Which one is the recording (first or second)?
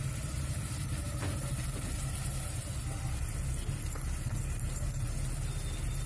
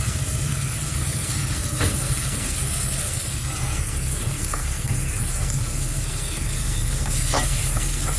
first